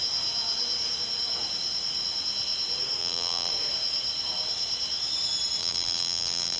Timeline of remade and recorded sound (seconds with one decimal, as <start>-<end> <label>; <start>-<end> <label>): 0.0-3.0 recorded; 3.0-3.5 remade; 3.5-5.6 recorded; 5.6-6.6 remade